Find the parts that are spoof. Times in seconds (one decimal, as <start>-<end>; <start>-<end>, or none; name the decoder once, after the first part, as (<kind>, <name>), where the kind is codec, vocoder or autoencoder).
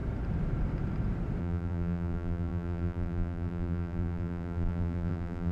1.4-5.5 (vocoder, BigVGAN v2)